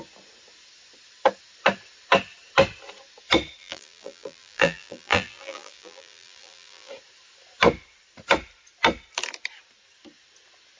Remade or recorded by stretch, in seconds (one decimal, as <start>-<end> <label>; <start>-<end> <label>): 0.0-3.6 recorded; 3.6-6.9 remade; 6.9-10.8 recorded